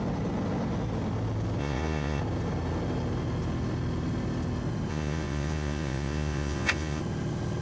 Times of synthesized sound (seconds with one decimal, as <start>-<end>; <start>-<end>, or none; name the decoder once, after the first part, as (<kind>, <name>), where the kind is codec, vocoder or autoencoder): 1.6-2.2 (vocoder, Vocos); 4.9-7.0

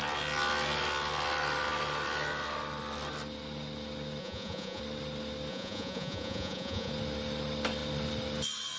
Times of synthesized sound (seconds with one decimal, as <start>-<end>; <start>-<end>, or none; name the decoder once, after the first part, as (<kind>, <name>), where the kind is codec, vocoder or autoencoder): 4.2-4.8 (vocoder, Vocos); 5.5-6.9